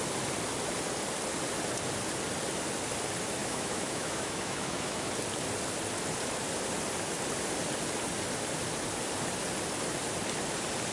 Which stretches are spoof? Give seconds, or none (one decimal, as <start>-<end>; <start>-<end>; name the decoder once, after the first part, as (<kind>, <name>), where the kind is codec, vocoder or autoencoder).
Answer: 3.4-5.1 (autoencoder, DAC-VAE)